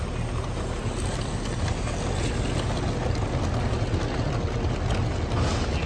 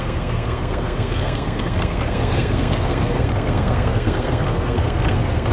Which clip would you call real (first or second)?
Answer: first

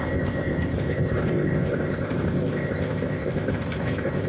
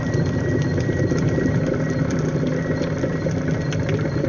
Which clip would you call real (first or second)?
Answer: second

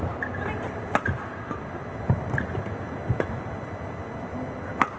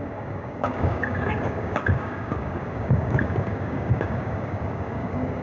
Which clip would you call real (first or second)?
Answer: first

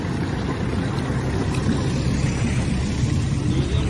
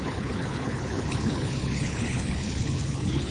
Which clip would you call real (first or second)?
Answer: first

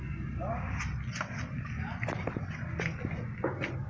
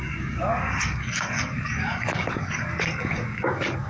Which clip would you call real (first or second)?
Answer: first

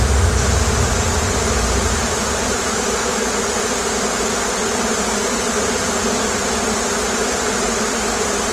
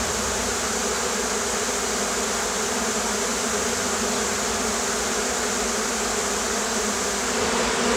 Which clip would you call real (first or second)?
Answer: second